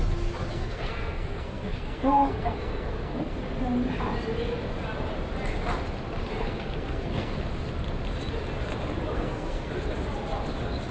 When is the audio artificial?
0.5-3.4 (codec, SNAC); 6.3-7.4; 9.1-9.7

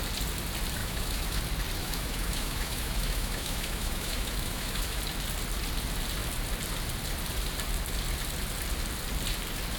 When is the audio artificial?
0.8-1.4 (autoencoder, DAC-VAE); 1.8-5.0

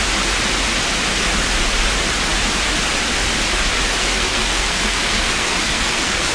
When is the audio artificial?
4.0-6.3 (codec, SNAC)